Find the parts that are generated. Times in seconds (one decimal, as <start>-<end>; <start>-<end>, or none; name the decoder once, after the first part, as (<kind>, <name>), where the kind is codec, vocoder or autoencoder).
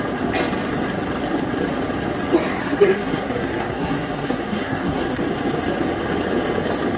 2.6-5.2 (codec, SNAC)